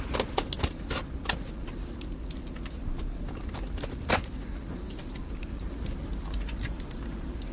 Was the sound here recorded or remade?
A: recorded